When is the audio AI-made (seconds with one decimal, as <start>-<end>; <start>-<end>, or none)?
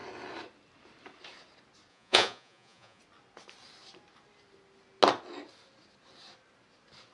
1.9-3.0